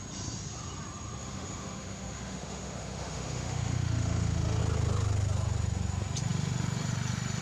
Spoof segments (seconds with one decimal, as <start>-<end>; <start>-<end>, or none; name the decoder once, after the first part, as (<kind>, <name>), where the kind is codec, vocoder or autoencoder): 1.2-4.6 (autoencoder, DAC-VAE)